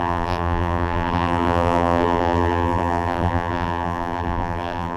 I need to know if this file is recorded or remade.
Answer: remade